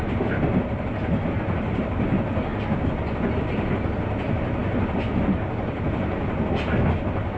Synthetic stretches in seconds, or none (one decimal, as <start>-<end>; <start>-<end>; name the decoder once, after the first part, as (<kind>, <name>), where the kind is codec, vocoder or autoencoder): none